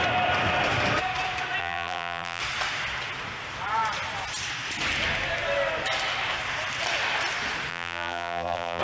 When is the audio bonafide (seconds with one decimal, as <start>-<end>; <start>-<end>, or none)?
0.0-1.6; 2.4-7.7